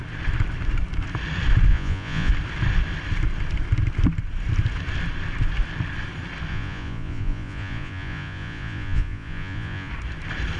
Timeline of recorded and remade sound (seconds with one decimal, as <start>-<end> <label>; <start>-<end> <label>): 0.0-1.7 recorded; 1.7-2.3 remade; 2.3-6.5 recorded; 6.5-9.9 remade; 9.9-10.6 recorded